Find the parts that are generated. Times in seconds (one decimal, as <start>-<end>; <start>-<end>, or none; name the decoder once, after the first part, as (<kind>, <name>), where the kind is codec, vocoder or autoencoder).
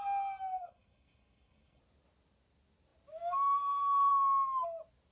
0.5-1.8 (codec, SNAC)